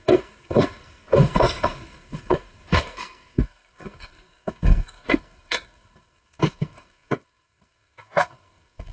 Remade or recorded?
remade